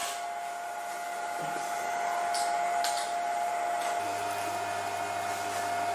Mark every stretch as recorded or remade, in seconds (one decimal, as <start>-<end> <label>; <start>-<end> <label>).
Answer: 0.0-5.9 recorded

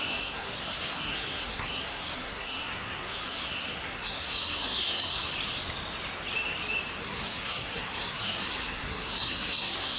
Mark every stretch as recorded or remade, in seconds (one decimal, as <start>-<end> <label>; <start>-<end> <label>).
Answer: 0.0-5.3 remade; 5.3-7.0 recorded; 7.0-10.0 remade

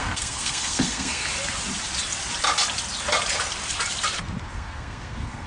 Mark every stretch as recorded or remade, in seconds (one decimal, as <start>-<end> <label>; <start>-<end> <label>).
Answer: 0.0-1.2 remade; 1.2-4.5 recorded; 4.5-5.5 remade

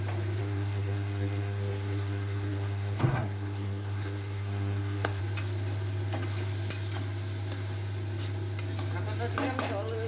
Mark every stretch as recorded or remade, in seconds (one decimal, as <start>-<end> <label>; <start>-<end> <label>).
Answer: 0.0-0.4 recorded; 0.4-5.2 remade; 5.2-10.1 recorded

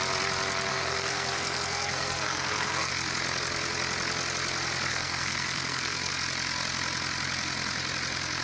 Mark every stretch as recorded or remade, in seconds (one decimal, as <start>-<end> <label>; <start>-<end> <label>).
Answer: 0.0-0.7 recorded; 0.7-2.9 remade; 2.9-4.9 recorded; 4.9-6.1 remade; 6.1-8.4 recorded

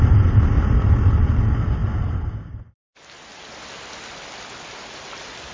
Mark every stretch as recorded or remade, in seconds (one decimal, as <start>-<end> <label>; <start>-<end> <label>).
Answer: 0.0-5.5 recorded